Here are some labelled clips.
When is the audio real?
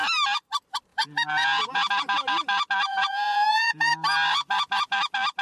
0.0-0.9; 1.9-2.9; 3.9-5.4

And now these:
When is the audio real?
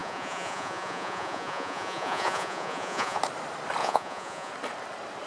3.2-3.8; 4.5-5.3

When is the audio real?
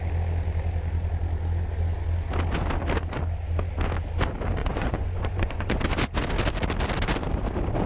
0.0-4.6; 5.8-7.9